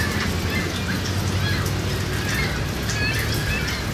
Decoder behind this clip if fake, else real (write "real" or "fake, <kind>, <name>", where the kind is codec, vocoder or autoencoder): real